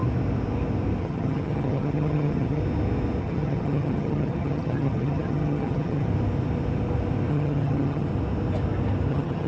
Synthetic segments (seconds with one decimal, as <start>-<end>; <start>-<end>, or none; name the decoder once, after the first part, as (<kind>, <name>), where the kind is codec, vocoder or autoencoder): 1.0-2.6 (vocoder, HiFi-GAN); 3.2-6.1; 7.3-8.1; 9.1-9.5